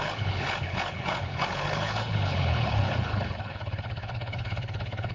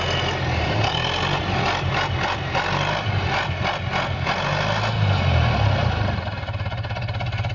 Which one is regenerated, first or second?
first